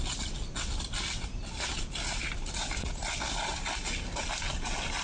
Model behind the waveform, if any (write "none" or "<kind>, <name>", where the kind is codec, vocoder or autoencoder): none